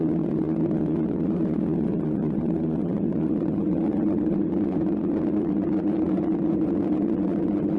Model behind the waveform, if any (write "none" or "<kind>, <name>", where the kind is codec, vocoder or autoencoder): vocoder, Vocos